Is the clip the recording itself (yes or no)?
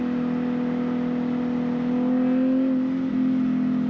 yes